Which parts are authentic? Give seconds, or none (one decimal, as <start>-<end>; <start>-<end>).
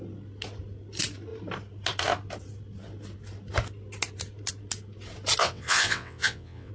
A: 0.0-5.4